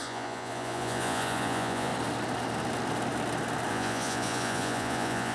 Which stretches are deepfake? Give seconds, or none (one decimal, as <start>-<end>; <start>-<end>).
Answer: 0.0-1.9; 3.7-5.3